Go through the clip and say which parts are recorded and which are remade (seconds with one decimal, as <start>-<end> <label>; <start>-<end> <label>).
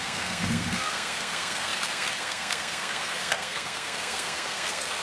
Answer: 0.0-5.0 remade